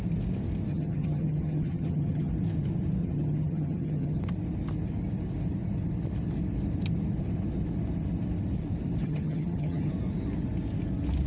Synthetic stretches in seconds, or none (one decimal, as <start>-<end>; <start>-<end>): 0.7-2.3; 3.0-4.2; 9.0-9.9